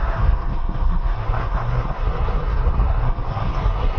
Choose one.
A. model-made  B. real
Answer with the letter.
A